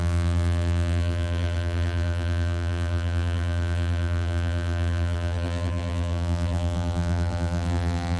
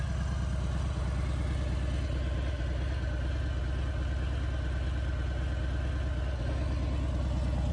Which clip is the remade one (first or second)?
first